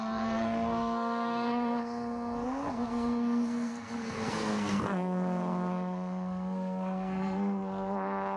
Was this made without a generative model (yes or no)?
no